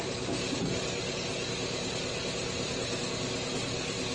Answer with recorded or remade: recorded